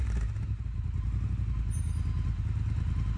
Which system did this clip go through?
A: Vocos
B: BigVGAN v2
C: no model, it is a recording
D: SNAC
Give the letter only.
C